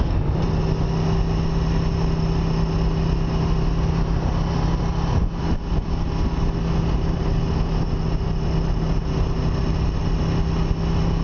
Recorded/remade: recorded